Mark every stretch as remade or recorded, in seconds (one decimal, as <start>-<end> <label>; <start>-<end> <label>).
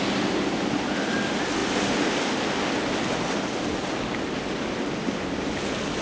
0.0-6.0 recorded